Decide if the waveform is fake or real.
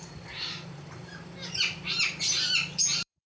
fake